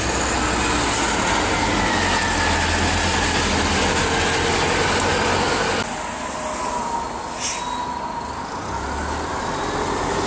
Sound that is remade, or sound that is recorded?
recorded